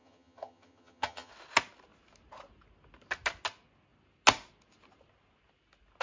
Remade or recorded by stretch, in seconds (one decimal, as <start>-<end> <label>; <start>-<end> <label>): 0.0-1.3 remade; 1.3-6.0 recorded